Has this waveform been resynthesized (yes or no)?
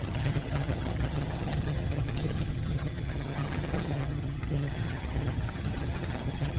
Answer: yes